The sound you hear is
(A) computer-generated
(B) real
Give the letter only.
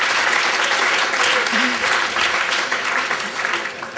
B